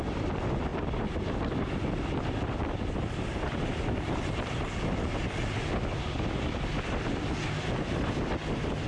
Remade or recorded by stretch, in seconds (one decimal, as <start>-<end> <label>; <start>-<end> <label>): 0.0-0.7 recorded; 0.7-2.9 remade; 2.9-8.9 recorded